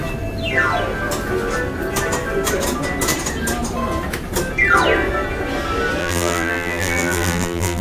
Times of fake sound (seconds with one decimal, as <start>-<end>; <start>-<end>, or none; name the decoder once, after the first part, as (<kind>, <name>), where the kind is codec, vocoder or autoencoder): 6.0-7.8 (vocoder, BigVGAN v2)